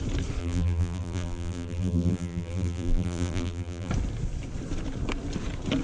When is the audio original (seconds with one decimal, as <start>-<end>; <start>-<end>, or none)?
0.0-0.4; 3.9-5.8